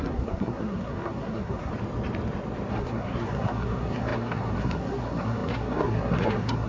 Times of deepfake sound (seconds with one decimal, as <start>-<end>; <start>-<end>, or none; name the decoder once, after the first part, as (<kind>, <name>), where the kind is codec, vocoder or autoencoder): 0.0-1.7 (codec, SNAC); 2.7-6.7